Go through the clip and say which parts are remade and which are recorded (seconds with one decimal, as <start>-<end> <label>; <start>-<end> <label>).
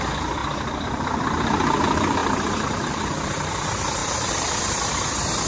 0.0-2.2 recorded; 2.2-3.5 remade; 3.5-4.0 recorded; 4.0-5.1 remade; 5.1-5.5 recorded